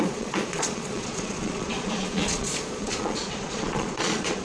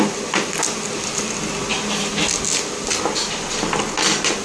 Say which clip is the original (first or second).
second